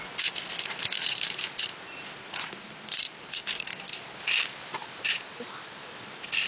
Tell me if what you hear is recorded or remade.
recorded